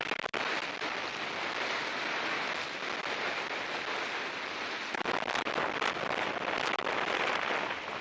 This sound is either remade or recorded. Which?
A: recorded